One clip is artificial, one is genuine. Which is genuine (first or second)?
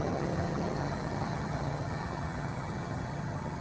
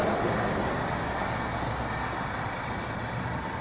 second